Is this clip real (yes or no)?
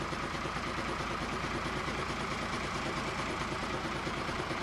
no